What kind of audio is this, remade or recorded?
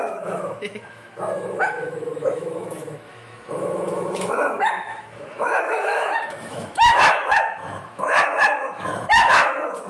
remade